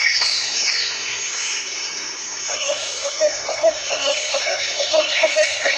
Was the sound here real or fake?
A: fake